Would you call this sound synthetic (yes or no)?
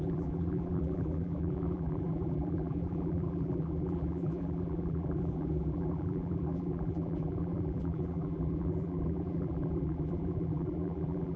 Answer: yes